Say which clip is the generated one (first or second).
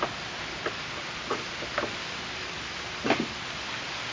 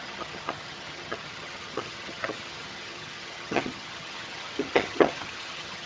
second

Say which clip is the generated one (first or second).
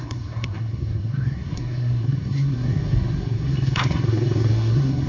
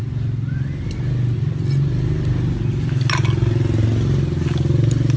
first